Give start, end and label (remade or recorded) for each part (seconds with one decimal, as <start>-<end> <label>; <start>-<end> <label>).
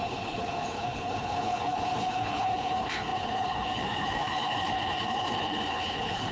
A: 0.0-6.3 remade